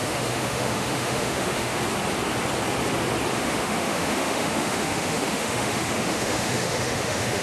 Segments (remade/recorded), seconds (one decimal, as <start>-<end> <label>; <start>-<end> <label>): 0.0-1.8 remade; 1.8-3.3 recorded; 3.3-7.4 remade